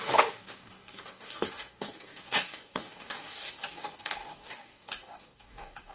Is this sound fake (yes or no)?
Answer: yes